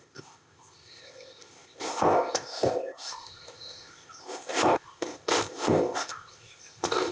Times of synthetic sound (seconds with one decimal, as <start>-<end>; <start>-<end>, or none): 0.0-7.1